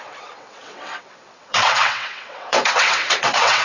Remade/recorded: remade